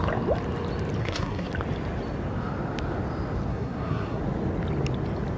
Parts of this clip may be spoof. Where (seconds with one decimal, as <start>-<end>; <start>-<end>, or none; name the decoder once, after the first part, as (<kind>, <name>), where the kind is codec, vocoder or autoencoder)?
1.0-1.5 (codec, SNAC); 3.5-4.2